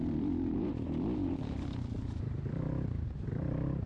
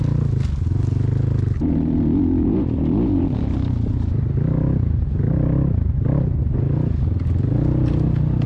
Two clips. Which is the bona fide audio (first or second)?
second